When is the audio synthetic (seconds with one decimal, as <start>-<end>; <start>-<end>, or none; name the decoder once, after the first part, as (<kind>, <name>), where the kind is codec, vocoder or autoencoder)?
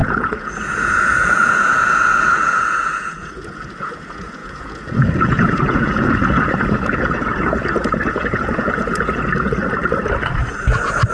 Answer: 0.0-9.6 (vocoder, Vocos)